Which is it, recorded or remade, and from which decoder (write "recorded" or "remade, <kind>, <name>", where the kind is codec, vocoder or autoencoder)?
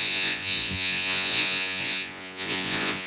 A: remade, vocoder, Vocos